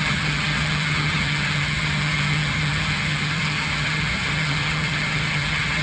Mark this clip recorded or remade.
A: remade